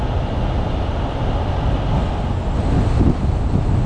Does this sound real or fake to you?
real